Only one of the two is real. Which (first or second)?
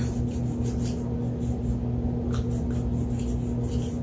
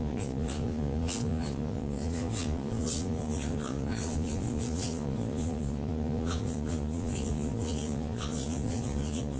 first